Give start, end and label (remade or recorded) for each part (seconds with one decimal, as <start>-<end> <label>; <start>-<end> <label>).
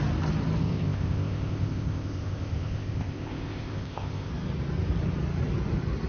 0.0-0.6 recorded; 0.6-4.3 remade; 4.3-6.1 recorded